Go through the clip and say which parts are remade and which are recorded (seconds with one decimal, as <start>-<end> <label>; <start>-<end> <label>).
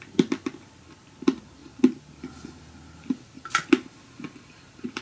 0.0-1.6 remade; 1.6-4.2 recorded; 4.2-5.0 remade